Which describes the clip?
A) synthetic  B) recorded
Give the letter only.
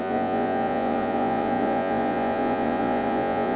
A